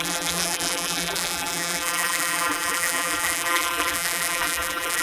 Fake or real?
fake